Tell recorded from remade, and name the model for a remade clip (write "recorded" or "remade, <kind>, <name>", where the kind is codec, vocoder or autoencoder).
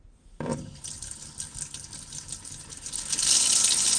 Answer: recorded